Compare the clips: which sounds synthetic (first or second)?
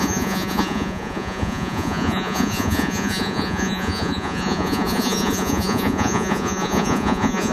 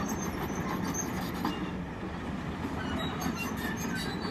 first